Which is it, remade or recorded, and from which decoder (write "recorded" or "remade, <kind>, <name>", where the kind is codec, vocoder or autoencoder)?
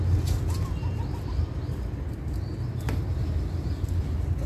recorded